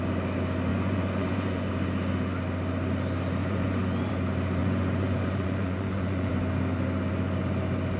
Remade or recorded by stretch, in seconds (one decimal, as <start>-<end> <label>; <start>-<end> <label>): 0.0-0.7 recorded; 0.7-1.7 remade; 1.7-3.4 recorded; 3.4-4.1 remade; 4.1-4.6 recorded; 4.6-6.3 remade; 6.3-8.0 recorded